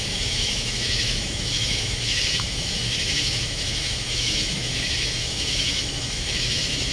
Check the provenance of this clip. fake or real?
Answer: fake